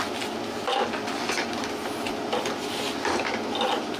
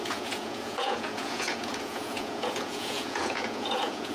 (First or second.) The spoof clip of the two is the second